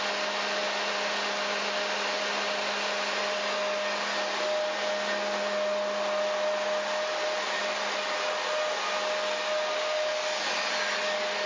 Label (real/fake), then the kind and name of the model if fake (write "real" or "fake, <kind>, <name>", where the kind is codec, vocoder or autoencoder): real